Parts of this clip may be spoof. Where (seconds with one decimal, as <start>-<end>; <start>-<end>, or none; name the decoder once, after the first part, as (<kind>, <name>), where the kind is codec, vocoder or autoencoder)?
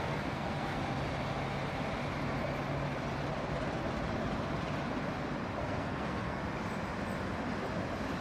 0.0-0.8 (codec, SNAC); 5.6-6.4